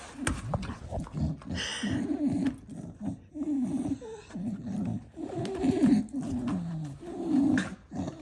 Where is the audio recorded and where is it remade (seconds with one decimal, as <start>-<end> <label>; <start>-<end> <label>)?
0.0-8.2 recorded